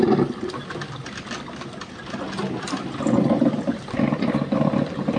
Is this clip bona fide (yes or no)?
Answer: yes